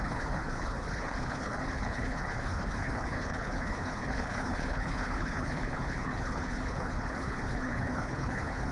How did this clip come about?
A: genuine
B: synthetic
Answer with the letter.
B